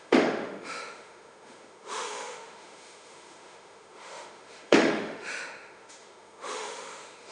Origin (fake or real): fake